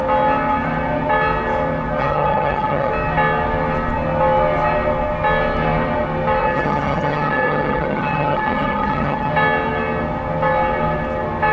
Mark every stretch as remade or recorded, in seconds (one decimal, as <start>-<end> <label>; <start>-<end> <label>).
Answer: 0.0-2.0 recorded; 2.0-2.9 remade; 2.9-6.4 recorded; 6.4-9.3 remade; 9.3-11.5 recorded